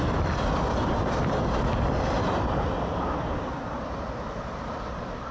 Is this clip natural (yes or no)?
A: yes